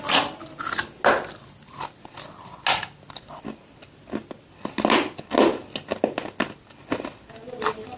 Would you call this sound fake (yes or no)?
no